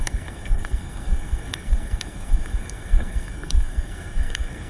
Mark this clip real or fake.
fake